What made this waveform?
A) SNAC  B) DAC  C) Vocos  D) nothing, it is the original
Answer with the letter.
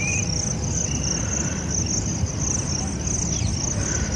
D